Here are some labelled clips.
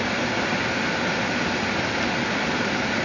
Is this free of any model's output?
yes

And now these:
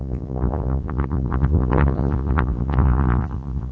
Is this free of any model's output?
no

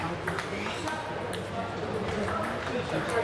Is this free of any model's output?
yes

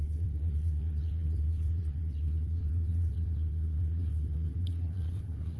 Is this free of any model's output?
no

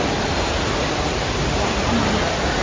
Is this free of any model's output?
no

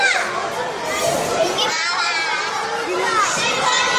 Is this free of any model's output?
yes